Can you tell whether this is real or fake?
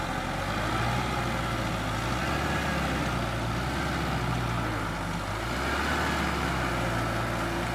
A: real